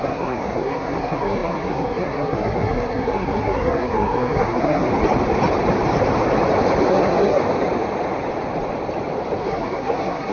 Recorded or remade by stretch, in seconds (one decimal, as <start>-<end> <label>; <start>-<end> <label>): 0.0-4.9 remade; 4.9-6.9 recorded; 6.9-7.4 remade; 7.4-9.4 recorded; 9.4-10.3 remade